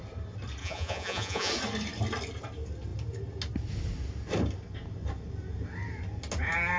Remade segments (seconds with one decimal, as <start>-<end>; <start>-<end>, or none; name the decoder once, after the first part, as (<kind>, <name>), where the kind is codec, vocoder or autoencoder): 0.6-1.5 (vocoder, Vocos)